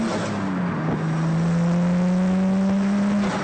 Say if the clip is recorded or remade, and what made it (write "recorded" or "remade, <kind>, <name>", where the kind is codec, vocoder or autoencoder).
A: recorded